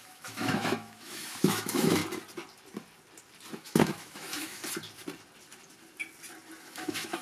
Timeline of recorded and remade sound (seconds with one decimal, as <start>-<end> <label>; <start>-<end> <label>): 0.0-2.0 remade; 2.0-3.6 recorded; 3.6-4.6 remade; 4.6-6.6 recorded; 6.6-7.2 remade